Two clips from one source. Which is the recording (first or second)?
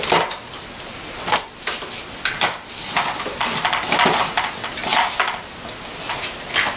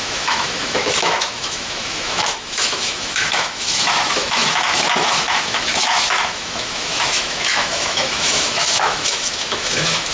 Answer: first